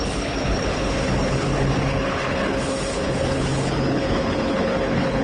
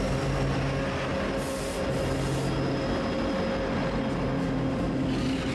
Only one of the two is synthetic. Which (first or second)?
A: first